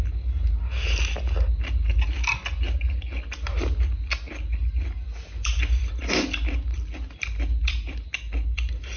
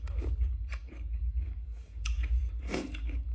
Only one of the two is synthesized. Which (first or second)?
second